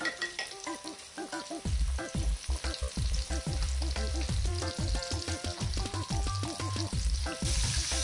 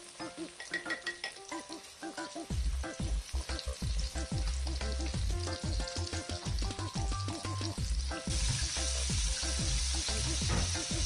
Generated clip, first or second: first